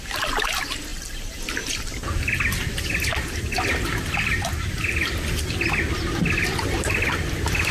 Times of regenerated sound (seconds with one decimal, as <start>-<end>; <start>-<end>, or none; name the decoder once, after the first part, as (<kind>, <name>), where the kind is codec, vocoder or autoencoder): none